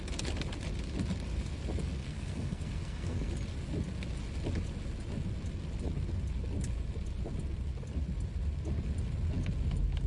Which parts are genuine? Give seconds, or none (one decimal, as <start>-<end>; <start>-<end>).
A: 0.0-2.0; 3.3-10.1